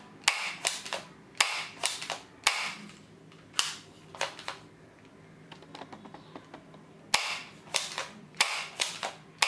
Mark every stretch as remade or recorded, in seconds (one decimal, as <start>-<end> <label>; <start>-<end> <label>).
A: 0.0-8.0 recorded; 8.0-8.9 remade; 8.9-9.5 recorded